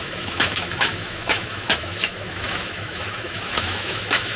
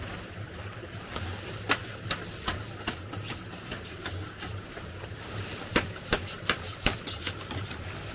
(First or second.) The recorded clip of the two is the second